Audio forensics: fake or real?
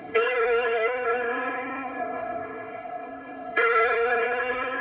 fake